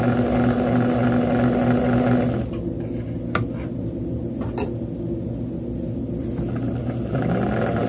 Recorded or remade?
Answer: recorded